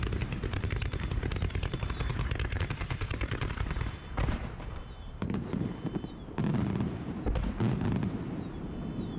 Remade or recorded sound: remade